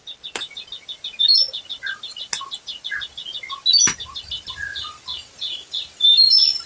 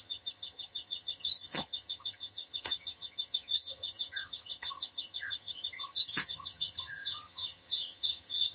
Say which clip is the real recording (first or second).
first